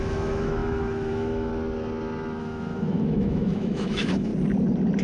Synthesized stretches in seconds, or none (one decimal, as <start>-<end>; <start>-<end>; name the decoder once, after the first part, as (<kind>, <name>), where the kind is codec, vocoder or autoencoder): 0.0-1.5 (autoencoder, DAC-VAE); 2.4-4.3